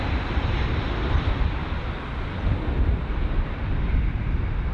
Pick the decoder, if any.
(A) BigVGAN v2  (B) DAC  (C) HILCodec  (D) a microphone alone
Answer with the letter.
A